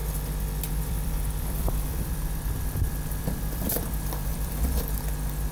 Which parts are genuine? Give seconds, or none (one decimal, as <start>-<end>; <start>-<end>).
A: 0.0-0.7